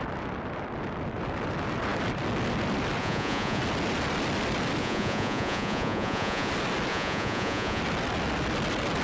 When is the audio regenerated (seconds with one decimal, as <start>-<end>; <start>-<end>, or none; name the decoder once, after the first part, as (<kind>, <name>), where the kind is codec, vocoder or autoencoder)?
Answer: 3.0-3.6 (vocoder, Vocos); 4.8-6.5; 6.9-7.8